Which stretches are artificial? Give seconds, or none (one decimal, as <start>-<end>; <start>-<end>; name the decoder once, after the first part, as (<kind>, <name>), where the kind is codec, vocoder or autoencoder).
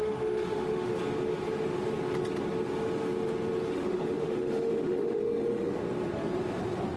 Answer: 0.0-0.9 (autoencoder, DAC-VAE); 3.7-5.8